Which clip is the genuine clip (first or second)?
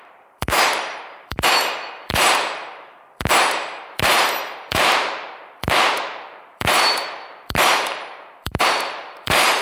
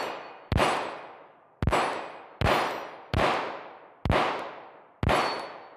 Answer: second